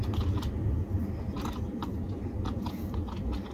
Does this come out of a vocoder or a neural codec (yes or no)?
no